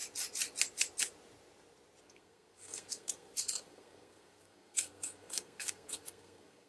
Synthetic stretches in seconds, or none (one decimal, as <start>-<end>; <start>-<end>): 2.0-6.7